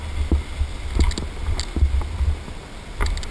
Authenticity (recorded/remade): recorded